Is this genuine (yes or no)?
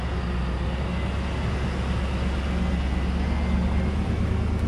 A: yes